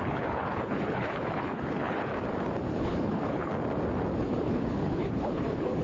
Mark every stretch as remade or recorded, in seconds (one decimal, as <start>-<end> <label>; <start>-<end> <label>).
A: 0.0-2.1 remade; 2.1-2.7 recorded; 2.7-3.5 remade; 3.5-4.2 recorded; 4.2-5.8 remade